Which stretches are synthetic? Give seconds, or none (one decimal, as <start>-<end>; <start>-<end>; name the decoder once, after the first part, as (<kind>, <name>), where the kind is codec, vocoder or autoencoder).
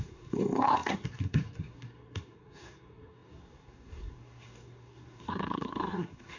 0.0-6.4 (codec, SNAC)